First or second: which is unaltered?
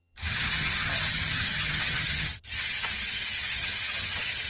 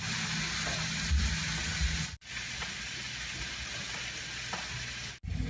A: second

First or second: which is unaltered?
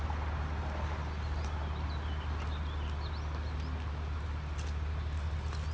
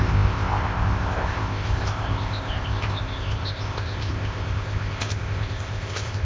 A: first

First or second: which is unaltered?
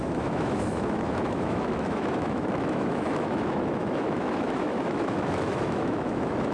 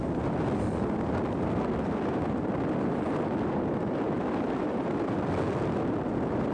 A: second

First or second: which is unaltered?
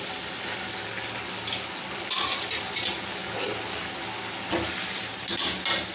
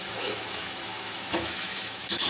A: first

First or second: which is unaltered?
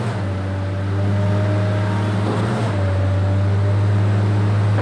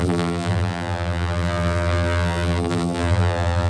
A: first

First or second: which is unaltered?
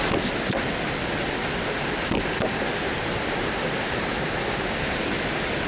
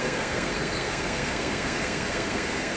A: first